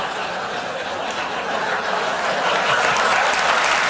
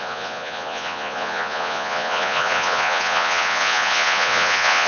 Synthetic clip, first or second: second